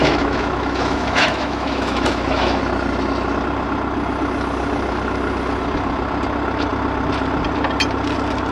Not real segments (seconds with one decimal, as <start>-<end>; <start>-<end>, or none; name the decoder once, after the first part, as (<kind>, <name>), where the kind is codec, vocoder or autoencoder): 0.0-2.6 (autoencoder, DAC-VAE)